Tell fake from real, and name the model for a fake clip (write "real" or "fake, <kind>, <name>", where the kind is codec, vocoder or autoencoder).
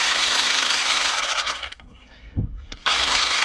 fake, codec, SNAC